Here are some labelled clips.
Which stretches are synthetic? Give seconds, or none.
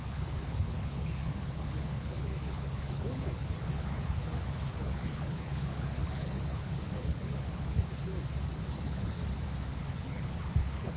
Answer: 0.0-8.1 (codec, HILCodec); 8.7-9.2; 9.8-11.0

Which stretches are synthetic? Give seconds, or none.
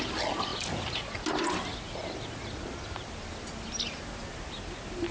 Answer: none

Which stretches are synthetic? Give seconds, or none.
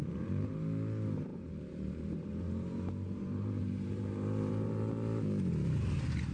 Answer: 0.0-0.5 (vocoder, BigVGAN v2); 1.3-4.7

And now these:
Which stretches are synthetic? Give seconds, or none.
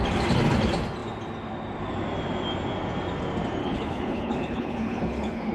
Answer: 3.6-5.5 (codec, HILCodec)